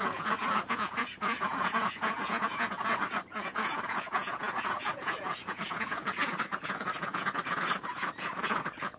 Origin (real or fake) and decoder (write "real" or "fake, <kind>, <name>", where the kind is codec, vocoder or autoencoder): fake, vocoder, Vocos